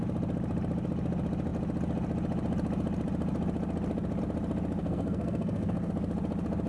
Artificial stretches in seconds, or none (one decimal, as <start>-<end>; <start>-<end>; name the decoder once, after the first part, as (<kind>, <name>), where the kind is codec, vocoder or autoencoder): 4.8-5.9 (codec, SNAC)